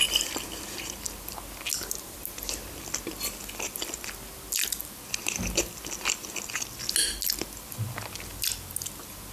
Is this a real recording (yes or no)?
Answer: yes